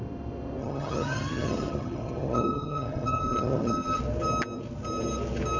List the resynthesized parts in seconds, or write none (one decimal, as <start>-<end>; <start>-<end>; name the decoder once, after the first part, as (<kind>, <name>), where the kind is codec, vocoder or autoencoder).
0.6-4.0 (vocoder, HiFi-GAN)